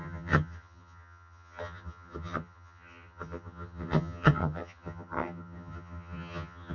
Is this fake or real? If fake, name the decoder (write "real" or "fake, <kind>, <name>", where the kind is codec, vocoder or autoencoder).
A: fake, vocoder, HiFi-GAN